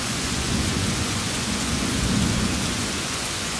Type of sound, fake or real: fake